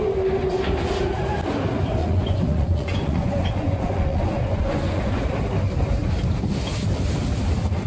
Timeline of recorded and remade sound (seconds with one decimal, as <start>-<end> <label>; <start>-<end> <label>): 0.0-2.0 recorded; 2.0-5.2 remade; 5.2-7.9 recorded